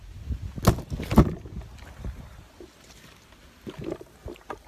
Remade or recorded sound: recorded